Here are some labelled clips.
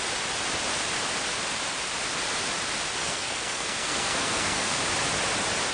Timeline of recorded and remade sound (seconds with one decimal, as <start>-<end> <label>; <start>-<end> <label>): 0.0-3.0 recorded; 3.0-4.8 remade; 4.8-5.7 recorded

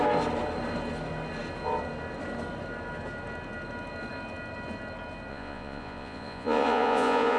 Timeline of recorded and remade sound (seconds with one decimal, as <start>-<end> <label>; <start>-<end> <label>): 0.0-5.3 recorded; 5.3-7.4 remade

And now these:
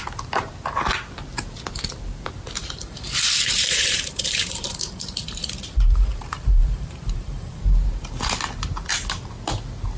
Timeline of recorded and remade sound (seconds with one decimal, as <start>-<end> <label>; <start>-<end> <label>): 0.0-2.6 recorded; 2.6-7.6 remade; 7.6-10.0 recorded

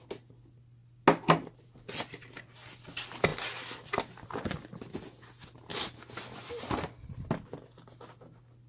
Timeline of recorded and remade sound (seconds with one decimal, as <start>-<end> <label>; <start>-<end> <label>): 0.0-8.7 recorded

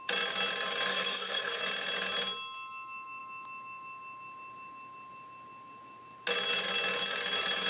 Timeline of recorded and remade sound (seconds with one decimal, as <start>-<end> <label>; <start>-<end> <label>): 0.0-0.9 recorded; 0.9-1.6 remade; 1.6-7.7 recorded

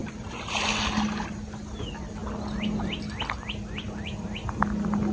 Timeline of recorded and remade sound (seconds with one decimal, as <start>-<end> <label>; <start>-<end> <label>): 0.0-5.1 recorded

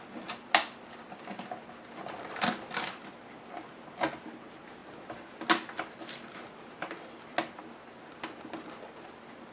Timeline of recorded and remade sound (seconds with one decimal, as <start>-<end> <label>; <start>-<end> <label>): 0.0-9.5 recorded

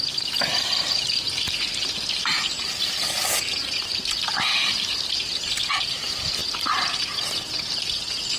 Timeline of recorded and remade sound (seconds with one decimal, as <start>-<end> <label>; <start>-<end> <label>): 0.0-4.5 recorded; 4.5-5.5 remade; 5.5-6.4 recorded; 6.4-6.9 remade; 6.9-8.4 recorded